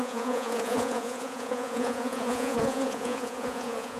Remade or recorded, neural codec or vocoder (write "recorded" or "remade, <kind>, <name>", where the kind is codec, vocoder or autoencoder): remade, vocoder, Vocos